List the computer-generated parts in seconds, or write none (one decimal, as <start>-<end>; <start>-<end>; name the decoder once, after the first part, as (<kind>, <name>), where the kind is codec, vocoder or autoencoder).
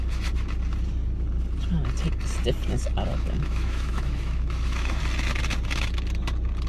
3.1-5.0 (autoencoder, DAC-VAE)